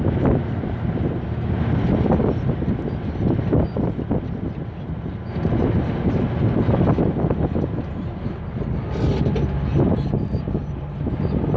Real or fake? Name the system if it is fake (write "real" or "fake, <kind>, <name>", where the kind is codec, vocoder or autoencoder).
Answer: real